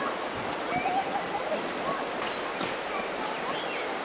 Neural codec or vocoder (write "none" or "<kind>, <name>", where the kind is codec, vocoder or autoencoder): none